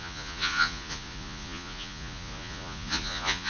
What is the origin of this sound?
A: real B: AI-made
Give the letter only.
B